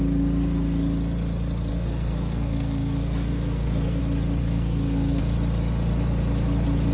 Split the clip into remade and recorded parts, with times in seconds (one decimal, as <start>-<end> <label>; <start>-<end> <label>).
0.0-1.7 recorded; 1.7-4.0 remade; 4.0-4.4 recorded; 4.4-5.2 remade; 5.2-6.9 recorded

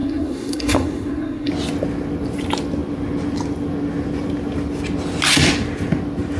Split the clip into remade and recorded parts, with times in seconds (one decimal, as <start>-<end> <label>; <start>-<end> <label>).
0.0-1.5 remade; 1.5-6.4 recorded

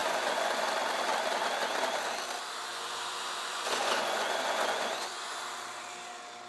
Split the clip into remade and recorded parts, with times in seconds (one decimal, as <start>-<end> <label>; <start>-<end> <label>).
0.0-0.7 remade; 0.7-2.7 recorded; 2.7-5.4 remade; 5.4-6.5 recorded

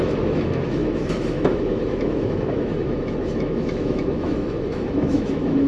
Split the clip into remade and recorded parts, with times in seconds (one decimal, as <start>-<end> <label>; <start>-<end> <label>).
0.0-5.7 remade

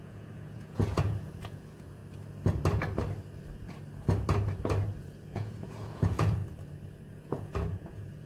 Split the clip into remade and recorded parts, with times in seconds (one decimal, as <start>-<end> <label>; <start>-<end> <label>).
0.0-2.0 remade; 2.0-5.0 recorded; 5.0-6.4 remade; 6.4-7.1 recorded; 7.1-8.3 remade

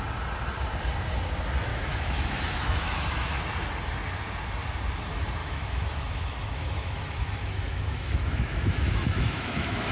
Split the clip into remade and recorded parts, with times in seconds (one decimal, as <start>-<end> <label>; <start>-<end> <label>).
0.0-1.7 recorded; 1.7-3.4 remade; 3.4-5.4 recorded; 5.4-9.9 remade

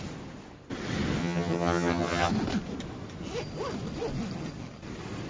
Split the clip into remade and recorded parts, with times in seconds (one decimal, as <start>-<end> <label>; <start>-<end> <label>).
0.0-1.2 recorded; 1.2-2.3 remade; 2.3-5.3 recorded

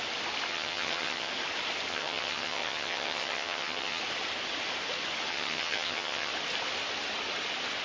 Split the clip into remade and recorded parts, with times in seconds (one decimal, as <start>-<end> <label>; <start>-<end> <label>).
0.0-0.5 recorded; 0.5-1.3 remade; 1.3-1.9 recorded; 1.9-4.0 remade; 4.0-5.3 recorded; 5.3-6.3 remade; 6.3-7.8 recorded